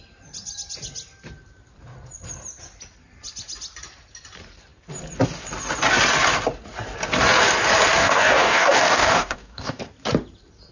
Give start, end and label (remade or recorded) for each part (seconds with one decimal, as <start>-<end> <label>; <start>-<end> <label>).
0.0-8.0 recorded; 8.0-9.8 remade; 9.8-10.7 recorded